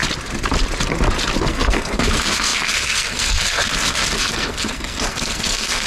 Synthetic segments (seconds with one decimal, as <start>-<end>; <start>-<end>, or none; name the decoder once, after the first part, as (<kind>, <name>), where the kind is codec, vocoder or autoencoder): 1.5-5.9 (codec, SNAC)